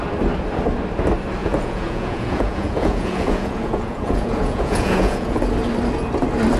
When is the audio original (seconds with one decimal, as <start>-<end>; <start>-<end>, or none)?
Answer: 0.0-1.4; 5.4-6.6